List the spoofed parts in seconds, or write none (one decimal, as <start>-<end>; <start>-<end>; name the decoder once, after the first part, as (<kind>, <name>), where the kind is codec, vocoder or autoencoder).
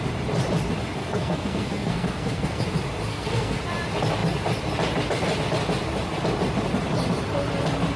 1.0-2.6 (codec, SNAC); 3.1-3.6